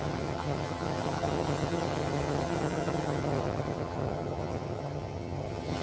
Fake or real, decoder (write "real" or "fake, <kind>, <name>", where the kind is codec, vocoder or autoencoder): fake, vocoder, HiFi-GAN